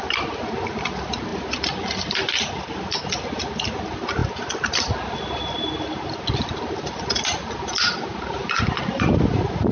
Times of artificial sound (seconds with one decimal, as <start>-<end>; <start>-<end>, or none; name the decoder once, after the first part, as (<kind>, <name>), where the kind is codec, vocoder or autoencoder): none